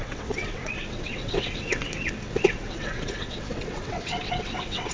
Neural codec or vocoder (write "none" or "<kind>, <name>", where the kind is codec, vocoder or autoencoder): vocoder, WaveNeXt